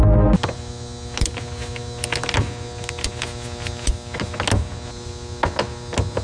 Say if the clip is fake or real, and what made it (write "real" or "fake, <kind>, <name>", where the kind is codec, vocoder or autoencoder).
real